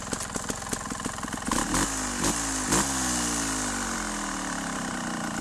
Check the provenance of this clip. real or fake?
real